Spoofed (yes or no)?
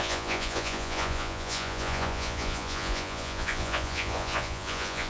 yes